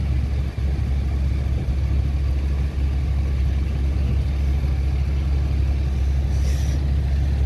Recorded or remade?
recorded